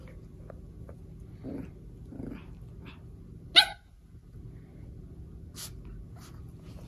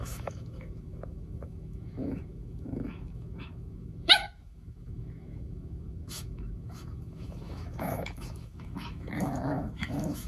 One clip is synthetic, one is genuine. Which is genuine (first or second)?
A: first